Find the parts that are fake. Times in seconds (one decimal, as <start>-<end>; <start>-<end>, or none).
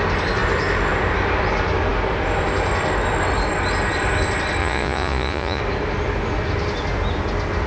4.6-5.6